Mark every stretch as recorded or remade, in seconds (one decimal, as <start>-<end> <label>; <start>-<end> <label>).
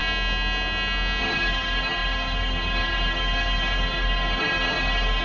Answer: 0.0-1.2 recorded; 1.2-5.2 remade